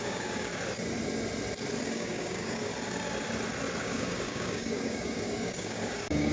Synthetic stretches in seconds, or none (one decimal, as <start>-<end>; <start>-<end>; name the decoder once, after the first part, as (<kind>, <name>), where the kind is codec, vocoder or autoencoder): 0.0-0.5 (codec, DAC); 1.9-2.7; 3.8-6.3